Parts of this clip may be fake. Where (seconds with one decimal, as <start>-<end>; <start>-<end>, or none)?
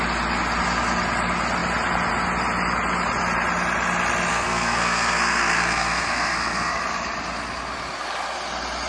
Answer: 4.3-6.8